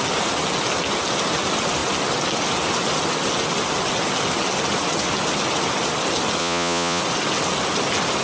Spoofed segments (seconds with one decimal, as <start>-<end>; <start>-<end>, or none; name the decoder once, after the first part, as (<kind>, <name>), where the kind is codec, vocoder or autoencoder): 6.4-7.0 (vocoder, Vocos)

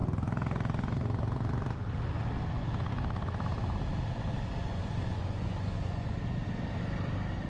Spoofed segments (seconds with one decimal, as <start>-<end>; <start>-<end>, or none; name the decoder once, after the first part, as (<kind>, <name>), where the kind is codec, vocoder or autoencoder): 4.7-6.1 (vocoder, Vocos)

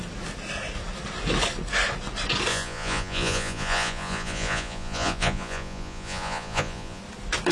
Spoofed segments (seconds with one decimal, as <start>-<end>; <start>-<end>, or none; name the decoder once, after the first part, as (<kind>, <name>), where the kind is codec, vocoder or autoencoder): 2.5-7.0 (vocoder, Vocos)

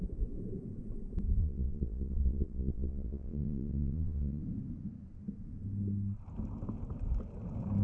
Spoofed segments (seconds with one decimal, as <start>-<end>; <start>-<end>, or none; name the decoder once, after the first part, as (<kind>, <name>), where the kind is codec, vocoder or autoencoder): 1.4-4.4 (vocoder, Vocos)

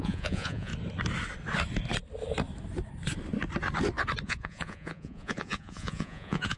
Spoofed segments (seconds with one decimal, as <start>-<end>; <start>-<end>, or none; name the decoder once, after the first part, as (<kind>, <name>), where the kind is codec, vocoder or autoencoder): 0.0-0.7 (vocoder, Vocos); 4.2-6.6

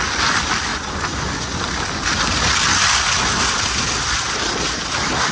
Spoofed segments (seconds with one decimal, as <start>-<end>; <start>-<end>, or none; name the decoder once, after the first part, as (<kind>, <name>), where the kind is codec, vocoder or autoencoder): 0.7-1.6 (vocoder, Vocos)